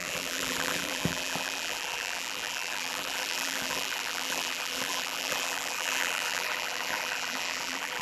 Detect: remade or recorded remade